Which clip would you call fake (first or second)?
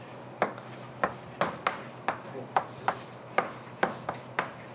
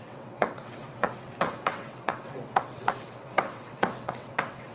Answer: second